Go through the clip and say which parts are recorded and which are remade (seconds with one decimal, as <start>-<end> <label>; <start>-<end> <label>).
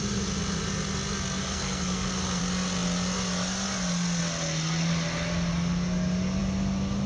0.0-1.4 recorded; 1.4-2.4 remade; 2.4-7.1 recorded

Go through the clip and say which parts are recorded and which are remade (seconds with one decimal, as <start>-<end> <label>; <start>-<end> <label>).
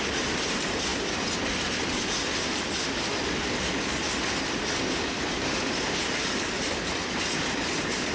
0.0-8.1 recorded